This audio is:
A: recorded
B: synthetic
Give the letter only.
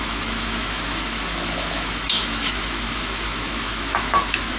B